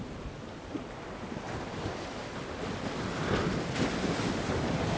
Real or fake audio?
real